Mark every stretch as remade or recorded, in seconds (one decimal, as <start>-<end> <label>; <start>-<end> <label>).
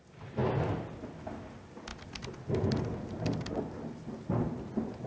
0.0-5.1 recorded